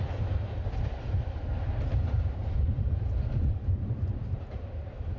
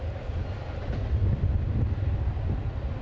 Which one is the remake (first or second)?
first